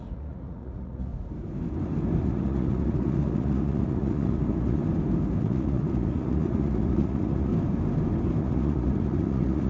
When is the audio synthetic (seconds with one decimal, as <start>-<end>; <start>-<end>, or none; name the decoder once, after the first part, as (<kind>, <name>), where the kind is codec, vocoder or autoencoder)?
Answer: 0.0-1.1 (vocoder, Vocos); 2.2-4.8; 5.4-7.5; 8.4-9.7